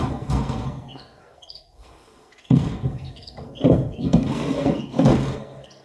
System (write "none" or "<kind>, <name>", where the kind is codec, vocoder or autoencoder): codec, SNAC